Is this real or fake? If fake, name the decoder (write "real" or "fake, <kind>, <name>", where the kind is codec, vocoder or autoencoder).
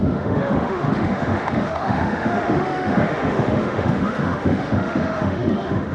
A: fake, autoencoder, DAC-VAE